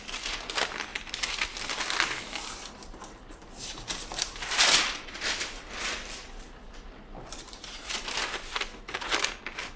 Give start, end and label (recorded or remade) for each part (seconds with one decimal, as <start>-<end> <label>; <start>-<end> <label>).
0.0-0.9 recorded; 0.9-1.8 remade; 1.8-3.4 recorded; 3.4-8.2 remade; 8.2-9.8 recorded